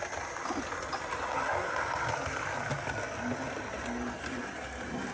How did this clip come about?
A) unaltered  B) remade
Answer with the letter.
A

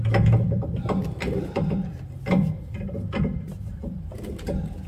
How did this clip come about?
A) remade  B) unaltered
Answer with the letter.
B